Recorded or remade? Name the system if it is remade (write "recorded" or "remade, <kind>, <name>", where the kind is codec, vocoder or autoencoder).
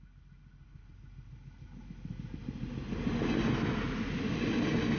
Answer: recorded